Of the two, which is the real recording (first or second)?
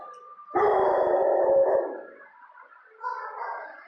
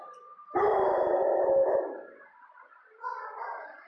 first